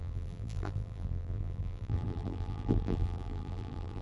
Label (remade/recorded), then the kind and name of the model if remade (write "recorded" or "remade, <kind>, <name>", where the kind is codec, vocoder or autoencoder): remade, vocoder, BigVGAN v2